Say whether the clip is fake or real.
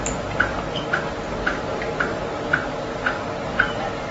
real